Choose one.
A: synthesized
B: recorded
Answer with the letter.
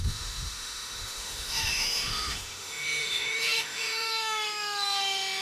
A